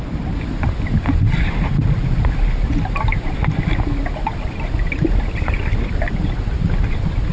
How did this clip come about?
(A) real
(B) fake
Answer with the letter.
A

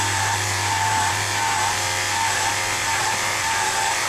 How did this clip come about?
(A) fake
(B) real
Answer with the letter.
A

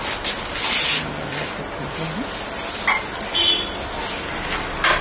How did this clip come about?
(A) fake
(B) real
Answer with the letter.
B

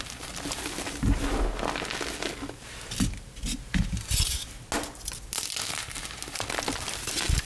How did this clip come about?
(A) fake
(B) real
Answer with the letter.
B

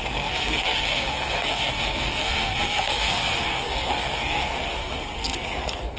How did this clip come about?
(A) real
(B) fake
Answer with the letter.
B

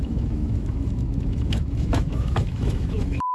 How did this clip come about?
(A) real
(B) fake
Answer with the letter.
B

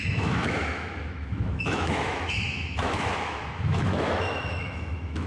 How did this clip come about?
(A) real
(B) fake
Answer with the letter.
B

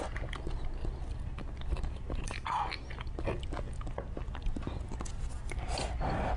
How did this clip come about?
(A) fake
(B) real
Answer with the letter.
B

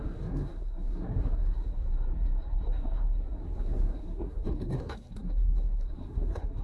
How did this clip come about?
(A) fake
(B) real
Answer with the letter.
A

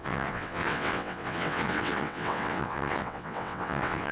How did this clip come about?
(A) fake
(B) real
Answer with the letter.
A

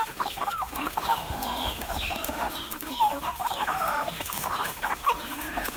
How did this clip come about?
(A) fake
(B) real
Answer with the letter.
A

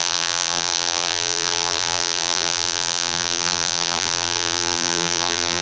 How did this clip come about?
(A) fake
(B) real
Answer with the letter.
A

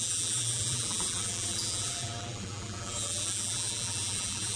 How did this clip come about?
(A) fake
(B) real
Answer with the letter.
A